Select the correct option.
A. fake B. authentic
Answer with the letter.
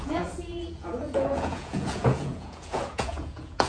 A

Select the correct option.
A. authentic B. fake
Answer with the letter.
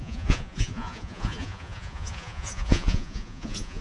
B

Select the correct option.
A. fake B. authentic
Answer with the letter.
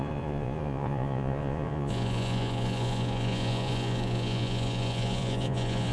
A